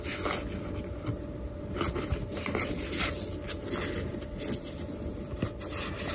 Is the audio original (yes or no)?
yes